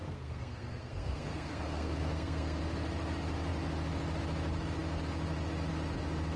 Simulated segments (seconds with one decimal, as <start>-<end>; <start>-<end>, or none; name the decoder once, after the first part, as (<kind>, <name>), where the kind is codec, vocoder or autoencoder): 0.0-2.6 (codec, SNAC)